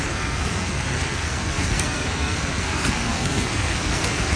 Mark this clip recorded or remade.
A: remade